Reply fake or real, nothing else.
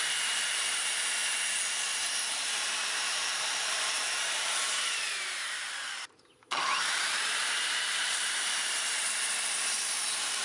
fake